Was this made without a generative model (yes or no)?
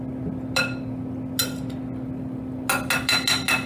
yes